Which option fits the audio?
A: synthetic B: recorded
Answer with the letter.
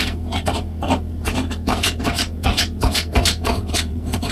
A